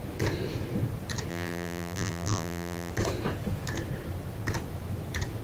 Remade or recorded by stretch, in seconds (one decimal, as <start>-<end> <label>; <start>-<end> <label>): 0.0-1.3 recorded; 1.3-2.9 remade; 2.9-5.4 recorded